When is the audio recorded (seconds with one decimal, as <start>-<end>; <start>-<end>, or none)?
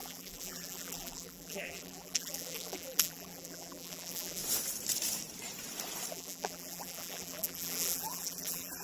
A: 4.4-6.1